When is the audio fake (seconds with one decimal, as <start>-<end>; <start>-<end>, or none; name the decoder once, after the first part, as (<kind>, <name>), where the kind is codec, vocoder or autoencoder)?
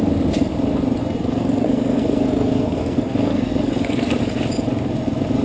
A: 1.0-4.2 (codec, SNAC)